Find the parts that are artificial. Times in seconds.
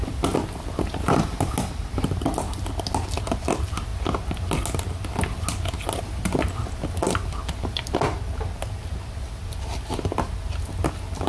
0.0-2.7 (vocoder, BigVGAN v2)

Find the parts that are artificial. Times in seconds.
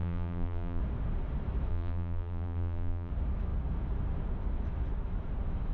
0.0-0.8 (vocoder, BigVGAN v2); 1.7-3.1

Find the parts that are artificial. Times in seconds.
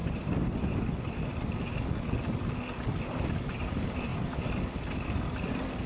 3.5-4.1 (vocoder, BigVGAN v2)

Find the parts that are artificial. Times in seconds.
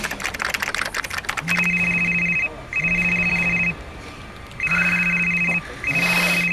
none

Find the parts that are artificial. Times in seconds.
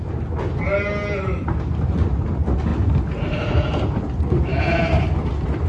none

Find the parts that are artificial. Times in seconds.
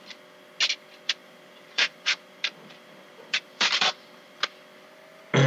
1.2-4.4 (vocoder, BigVGAN v2)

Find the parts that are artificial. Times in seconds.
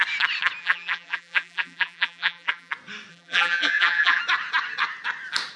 0.6-2.7 (vocoder, BigVGAN v2); 3.1-4.2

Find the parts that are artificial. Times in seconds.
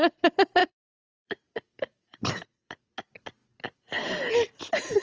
0.6-2.9 (vocoder, BigVGAN v2)